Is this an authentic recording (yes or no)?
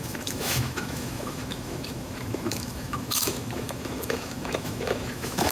no